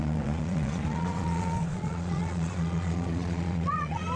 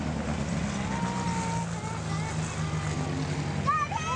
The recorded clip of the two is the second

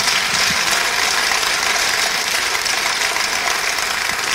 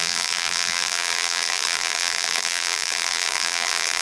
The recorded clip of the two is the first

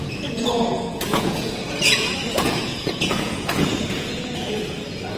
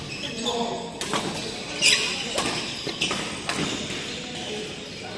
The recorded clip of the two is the second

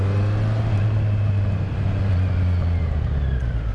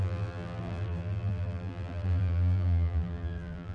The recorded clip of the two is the first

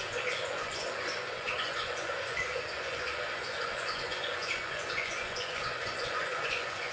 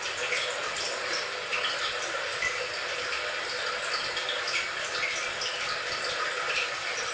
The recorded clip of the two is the second